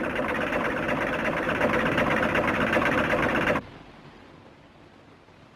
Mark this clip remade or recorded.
recorded